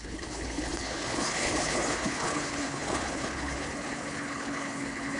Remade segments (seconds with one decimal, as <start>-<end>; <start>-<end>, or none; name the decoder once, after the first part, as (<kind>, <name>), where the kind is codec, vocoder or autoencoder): 0.0-5.2 (codec, HILCodec)